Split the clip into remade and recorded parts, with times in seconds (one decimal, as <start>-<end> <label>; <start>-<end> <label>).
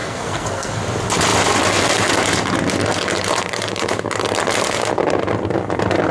0.0-0.8 remade; 0.8-6.1 recorded